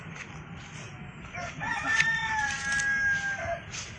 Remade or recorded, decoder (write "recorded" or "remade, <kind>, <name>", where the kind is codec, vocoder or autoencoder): recorded